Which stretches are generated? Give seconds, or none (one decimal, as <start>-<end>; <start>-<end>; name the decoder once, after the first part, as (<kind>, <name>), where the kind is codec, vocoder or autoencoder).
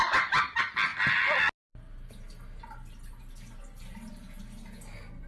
none